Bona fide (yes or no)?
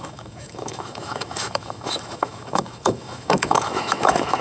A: no